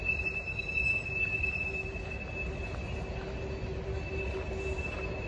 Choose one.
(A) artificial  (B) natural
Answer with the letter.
B